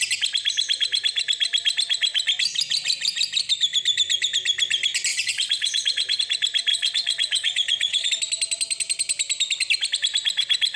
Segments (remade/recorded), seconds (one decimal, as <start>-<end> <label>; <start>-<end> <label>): 0.0-5.1 recorded; 5.1-6.2 remade; 6.2-6.7 recorded; 6.7-8.1 remade; 8.1-10.8 recorded